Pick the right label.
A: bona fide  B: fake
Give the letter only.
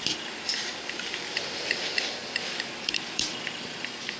B